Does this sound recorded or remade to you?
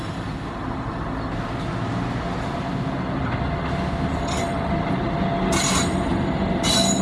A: recorded